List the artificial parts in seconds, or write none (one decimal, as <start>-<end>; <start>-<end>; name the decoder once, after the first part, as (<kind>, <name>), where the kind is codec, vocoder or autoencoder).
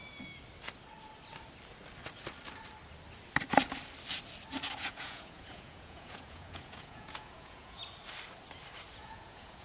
4.8-7.8 (vocoder, Vocos); 8.9-9.6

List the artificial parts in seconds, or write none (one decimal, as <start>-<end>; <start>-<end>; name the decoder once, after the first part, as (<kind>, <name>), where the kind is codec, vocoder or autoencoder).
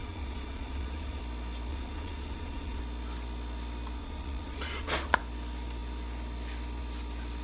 0.0-1.2 (vocoder, Vocos); 1.7-2.8; 4.0-5.2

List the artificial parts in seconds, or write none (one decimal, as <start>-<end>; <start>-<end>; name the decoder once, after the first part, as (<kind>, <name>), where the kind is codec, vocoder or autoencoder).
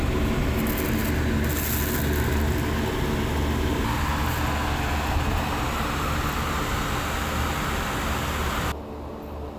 none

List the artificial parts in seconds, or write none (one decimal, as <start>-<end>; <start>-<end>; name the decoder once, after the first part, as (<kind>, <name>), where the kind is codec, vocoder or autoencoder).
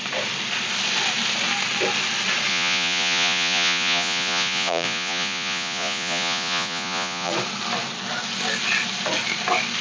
2.5-7.3 (vocoder, Vocos)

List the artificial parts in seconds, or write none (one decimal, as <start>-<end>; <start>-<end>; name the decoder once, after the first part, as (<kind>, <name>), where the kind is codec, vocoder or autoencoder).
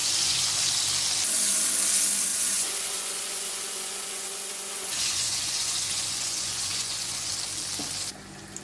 0.0-0.5 (vocoder, Vocos); 2.3-7.3